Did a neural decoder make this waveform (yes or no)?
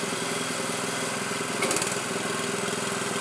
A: no